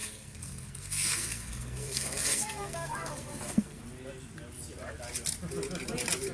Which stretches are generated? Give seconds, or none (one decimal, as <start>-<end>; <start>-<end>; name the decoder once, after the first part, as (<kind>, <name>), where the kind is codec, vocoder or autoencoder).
0.0-3.8 (codec, SNAC)